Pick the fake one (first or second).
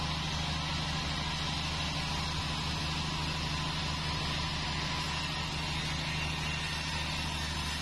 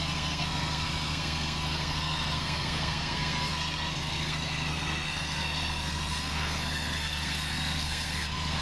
second